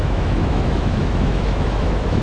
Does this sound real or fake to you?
fake